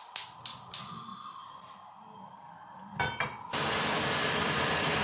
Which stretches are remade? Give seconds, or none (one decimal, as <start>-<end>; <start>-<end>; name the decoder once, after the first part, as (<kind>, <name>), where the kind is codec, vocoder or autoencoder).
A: none